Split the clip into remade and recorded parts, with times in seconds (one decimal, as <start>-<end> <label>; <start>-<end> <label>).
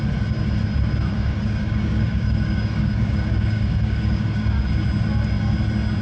0.0-1.1 recorded; 1.1-4.7 remade; 4.7-6.0 recorded